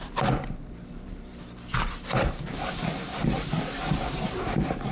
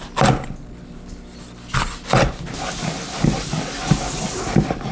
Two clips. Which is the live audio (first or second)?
second